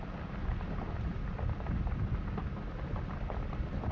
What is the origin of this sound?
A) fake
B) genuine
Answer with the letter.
B